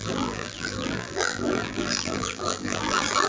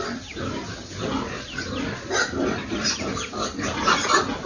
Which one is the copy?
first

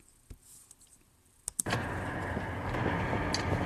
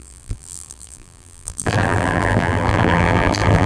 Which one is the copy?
second